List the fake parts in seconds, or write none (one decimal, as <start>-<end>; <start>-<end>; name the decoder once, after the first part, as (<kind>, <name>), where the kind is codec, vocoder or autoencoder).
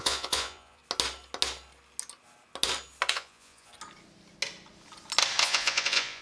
0.0-0.8 (vocoder, Vocos); 3.1-3.7; 5.4-6.2